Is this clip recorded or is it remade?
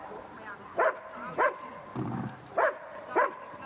remade